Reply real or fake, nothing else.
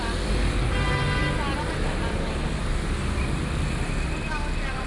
real